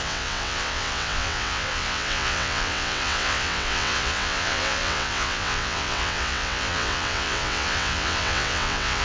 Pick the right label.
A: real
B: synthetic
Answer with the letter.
B